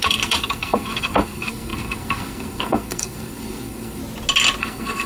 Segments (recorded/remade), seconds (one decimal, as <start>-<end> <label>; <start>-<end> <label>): 0.0-4.0 remade; 4.0-4.6 recorded; 4.6-5.1 remade